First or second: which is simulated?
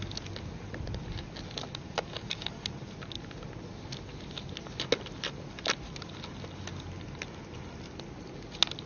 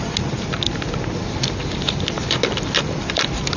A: second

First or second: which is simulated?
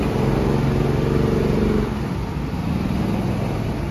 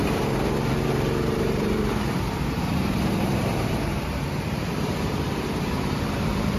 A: second